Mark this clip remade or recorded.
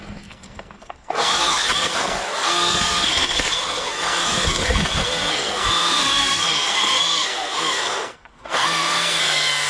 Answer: remade